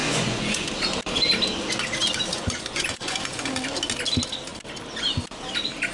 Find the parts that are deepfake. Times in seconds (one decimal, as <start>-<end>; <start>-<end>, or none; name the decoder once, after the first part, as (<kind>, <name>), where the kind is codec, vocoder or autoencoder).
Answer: 0.0-0.7 (vocoder, Vocos); 2.3-3.5